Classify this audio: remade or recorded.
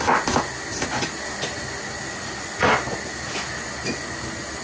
recorded